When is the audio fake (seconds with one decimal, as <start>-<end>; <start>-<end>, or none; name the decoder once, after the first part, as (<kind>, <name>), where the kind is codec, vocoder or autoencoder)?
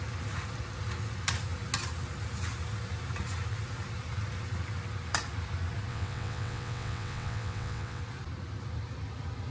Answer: 5.9-8.0 (vocoder, WaveNeXt)